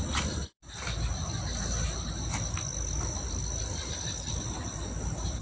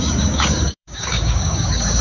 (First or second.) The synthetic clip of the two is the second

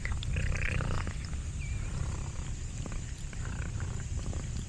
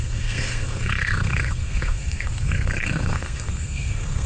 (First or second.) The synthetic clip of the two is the second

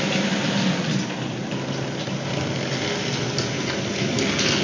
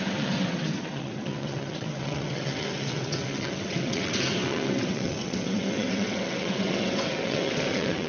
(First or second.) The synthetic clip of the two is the second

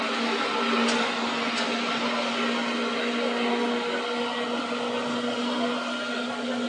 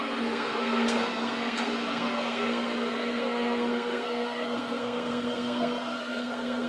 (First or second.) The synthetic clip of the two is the second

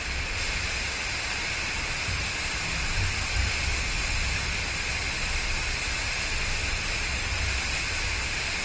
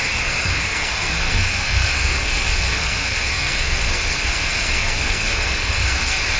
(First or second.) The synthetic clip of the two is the second